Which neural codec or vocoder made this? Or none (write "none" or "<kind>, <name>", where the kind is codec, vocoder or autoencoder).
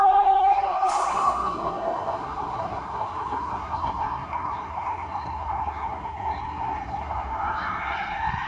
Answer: codec, SNAC